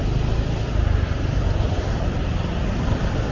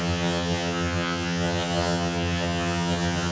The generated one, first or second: second